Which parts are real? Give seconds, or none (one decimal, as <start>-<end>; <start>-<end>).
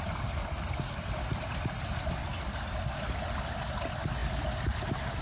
0.0-2.2; 3.0-5.2